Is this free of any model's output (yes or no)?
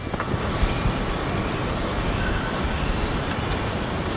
no